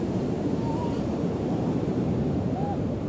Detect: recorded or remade remade